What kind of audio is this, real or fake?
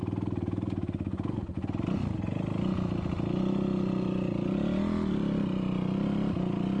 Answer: real